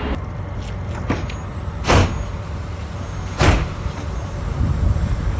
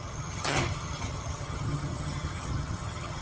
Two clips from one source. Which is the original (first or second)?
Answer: first